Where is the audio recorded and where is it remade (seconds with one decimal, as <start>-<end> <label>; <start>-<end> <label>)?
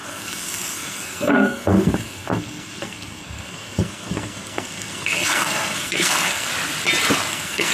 0.0-6.5 remade; 6.5-7.3 recorded; 7.3-7.7 remade